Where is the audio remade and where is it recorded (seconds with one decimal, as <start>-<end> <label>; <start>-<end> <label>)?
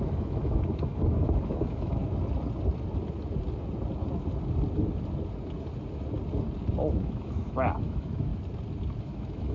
0.0-2.0 remade; 2.0-6.9 recorded; 6.9-8.3 remade; 8.3-9.0 recorded; 9.0-9.5 remade